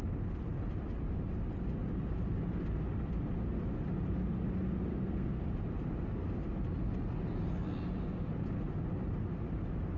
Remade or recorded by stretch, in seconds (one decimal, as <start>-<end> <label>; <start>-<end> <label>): 0.0-4.9 recorded; 4.9-5.4 remade; 5.4-10.0 recorded